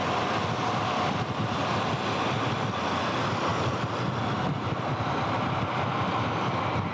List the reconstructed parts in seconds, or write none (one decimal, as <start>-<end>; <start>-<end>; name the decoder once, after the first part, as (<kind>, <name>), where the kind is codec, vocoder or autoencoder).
none